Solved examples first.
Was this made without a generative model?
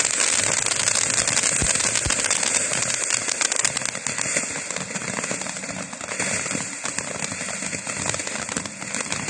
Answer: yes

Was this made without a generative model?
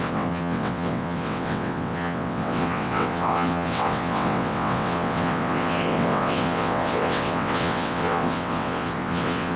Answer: no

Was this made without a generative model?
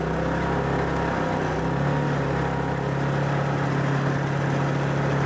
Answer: yes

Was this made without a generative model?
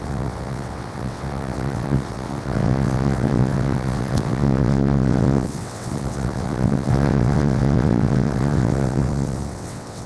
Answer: no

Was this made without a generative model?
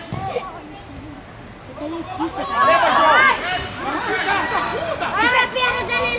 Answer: yes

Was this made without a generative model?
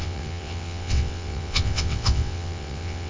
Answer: no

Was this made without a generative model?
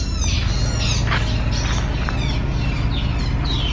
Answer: yes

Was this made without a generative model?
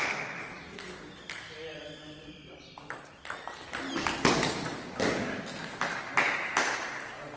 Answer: yes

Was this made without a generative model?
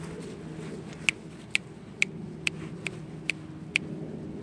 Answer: yes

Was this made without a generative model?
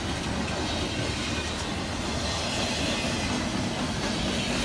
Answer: yes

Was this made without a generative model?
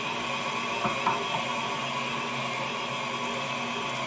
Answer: yes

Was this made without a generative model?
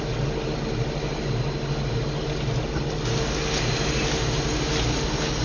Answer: yes